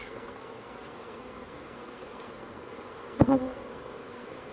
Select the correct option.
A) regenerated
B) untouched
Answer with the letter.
A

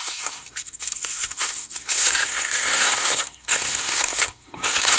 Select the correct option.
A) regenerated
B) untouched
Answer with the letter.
A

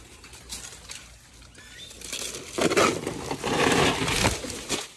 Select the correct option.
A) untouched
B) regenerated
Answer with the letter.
A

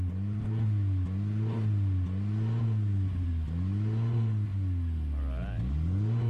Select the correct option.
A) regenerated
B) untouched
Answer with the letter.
B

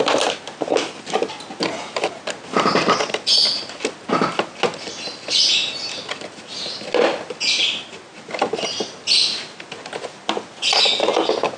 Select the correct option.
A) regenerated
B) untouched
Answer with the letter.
B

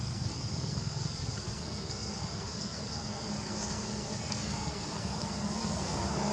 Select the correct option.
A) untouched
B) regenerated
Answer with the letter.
B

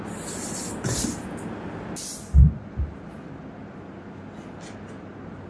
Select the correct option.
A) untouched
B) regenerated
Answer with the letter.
A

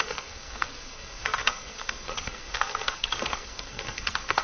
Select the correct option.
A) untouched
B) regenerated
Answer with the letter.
B